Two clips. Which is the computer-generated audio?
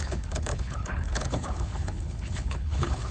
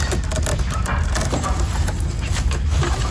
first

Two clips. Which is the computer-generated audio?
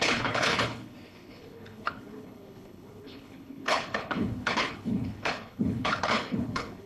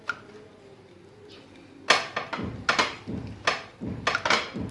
first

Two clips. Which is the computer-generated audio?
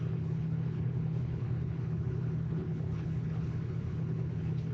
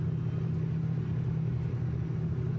first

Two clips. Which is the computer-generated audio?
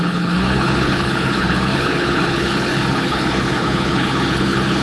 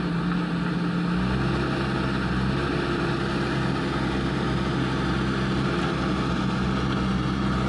first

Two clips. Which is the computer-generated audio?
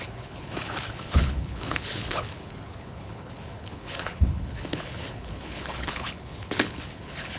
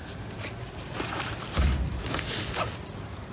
first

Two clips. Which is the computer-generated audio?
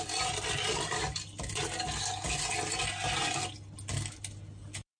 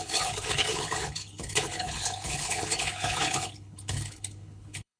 second